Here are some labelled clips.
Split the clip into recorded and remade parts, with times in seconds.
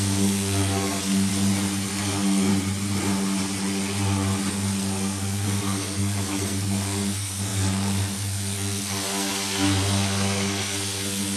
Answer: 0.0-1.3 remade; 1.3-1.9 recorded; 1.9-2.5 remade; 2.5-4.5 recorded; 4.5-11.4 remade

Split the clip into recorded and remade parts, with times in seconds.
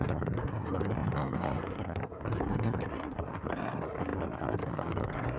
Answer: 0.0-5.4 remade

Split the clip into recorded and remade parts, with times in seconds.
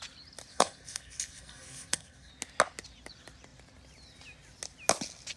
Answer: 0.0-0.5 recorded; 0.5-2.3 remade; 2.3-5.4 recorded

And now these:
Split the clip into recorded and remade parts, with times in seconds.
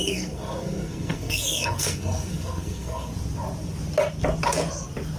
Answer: 0.0-3.1 remade; 3.1-5.2 recorded